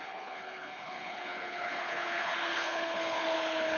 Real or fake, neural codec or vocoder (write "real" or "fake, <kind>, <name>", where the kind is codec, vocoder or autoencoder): fake, codec, HILCodec